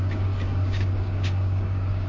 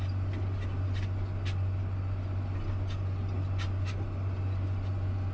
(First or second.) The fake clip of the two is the first